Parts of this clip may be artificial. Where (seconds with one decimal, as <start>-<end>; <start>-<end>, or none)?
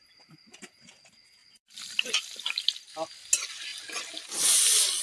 1.4-2.1